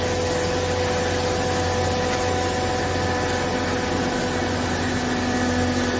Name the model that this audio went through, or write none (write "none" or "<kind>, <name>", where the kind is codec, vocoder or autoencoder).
none